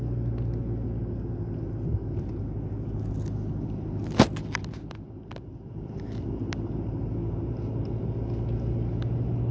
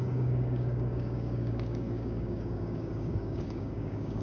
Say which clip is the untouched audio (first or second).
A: first